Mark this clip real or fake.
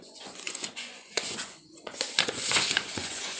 fake